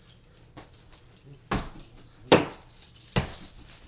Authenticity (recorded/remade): recorded